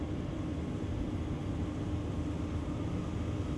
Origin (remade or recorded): recorded